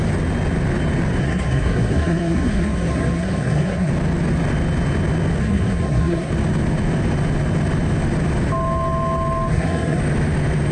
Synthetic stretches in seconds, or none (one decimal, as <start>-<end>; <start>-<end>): 1.2-3.9; 5.4-6.3; 9.5-10.0